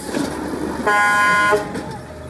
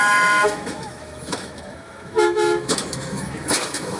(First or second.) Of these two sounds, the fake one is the second